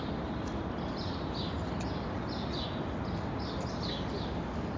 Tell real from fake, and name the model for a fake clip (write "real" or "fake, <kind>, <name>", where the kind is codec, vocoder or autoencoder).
real